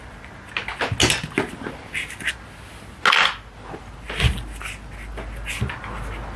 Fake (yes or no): no